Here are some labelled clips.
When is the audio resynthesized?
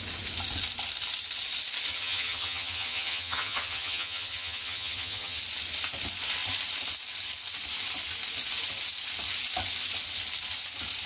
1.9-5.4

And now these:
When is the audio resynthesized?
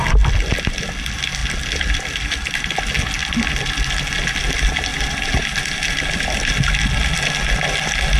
1.4-2.8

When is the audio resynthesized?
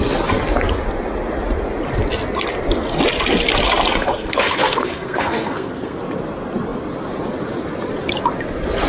4.1-6.0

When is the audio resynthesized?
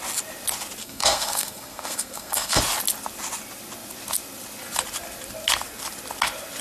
0.8-2.6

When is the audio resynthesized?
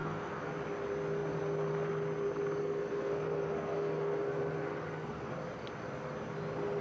0.0-0.5; 2.6-5.3